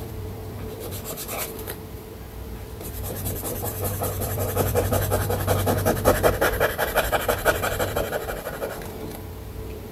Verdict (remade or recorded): remade